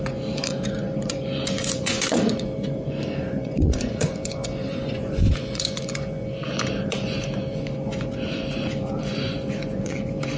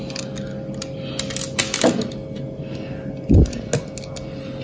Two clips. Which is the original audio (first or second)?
second